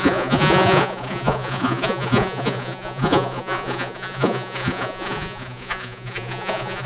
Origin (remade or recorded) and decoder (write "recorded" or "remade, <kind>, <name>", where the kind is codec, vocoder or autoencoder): remade, vocoder, Vocos